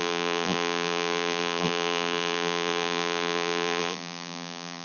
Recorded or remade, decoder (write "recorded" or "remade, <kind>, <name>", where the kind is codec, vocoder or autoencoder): remade, vocoder, BigVGAN v2